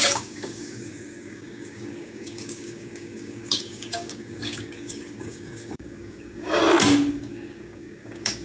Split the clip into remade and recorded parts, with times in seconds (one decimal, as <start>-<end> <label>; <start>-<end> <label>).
0.0-6.6 remade; 6.6-7.1 recorded; 7.1-8.4 remade